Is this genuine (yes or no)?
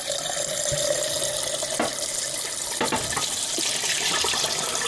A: yes